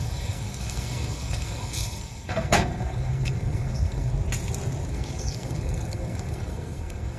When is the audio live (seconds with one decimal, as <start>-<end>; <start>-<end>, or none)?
4.1-4.9